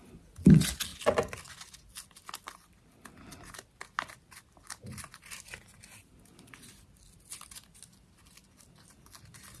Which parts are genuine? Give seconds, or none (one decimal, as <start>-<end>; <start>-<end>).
0.0-9.6